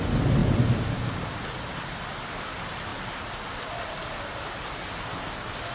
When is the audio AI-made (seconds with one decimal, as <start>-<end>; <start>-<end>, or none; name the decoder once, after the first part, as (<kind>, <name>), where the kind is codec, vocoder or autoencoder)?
none